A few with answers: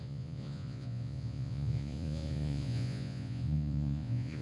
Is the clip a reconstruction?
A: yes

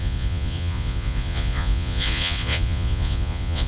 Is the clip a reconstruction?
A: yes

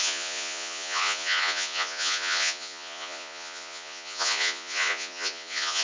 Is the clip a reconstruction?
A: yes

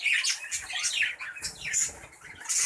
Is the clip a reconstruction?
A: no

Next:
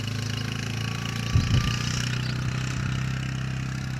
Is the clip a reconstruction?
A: no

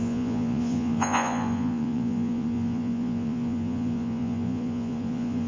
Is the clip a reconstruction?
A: yes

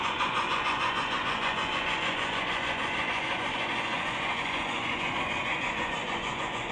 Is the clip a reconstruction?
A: yes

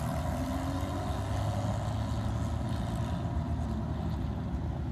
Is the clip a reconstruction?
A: no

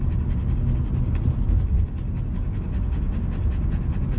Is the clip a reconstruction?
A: no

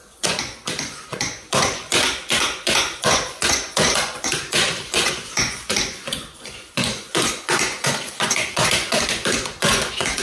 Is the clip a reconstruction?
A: yes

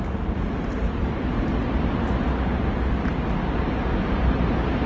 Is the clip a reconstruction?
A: no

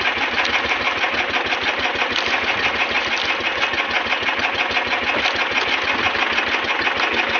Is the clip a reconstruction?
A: no